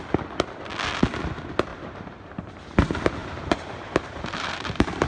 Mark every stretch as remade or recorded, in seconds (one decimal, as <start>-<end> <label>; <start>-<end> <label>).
0.0-1.7 recorded; 1.7-2.4 remade; 2.4-3.2 recorded; 3.2-5.1 remade